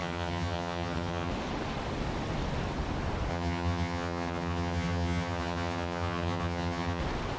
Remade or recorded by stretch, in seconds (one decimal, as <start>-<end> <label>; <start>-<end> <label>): 0.0-1.3 remade; 1.3-3.3 recorded; 3.3-7.0 remade; 7.0-7.4 recorded